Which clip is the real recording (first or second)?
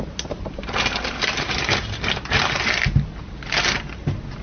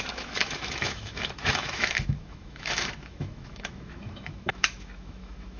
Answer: first